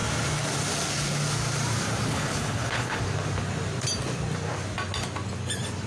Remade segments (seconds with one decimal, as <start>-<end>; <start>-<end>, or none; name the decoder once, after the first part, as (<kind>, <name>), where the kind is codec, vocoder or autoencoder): 2.1-3.0 (codec, HILCodec)